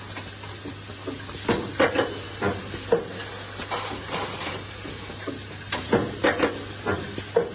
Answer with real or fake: real